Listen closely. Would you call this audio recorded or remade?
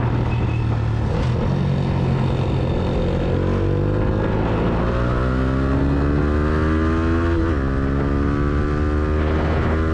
recorded